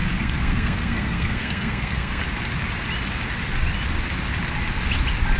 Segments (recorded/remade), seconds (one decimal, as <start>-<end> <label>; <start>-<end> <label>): 0.0-2.2 remade; 2.2-5.4 recorded